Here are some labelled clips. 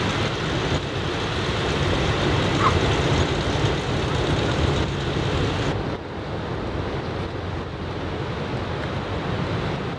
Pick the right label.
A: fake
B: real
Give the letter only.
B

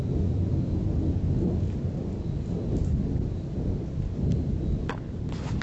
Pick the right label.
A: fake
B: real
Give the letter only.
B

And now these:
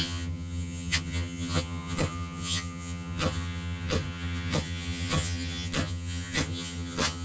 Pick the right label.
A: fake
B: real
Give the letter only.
A